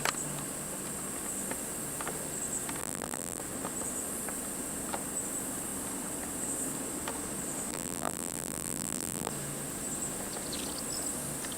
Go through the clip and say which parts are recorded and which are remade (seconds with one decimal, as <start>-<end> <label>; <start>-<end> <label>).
0.0-2.8 recorded; 2.8-3.4 remade; 3.4-7.7 recorded; 7.7-9.3 remade; 9.3-11.6 recorded